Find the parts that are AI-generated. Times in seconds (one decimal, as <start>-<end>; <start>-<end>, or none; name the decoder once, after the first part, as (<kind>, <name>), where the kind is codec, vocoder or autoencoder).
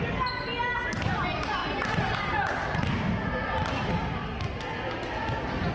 none